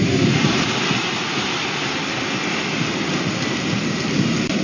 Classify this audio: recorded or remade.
remade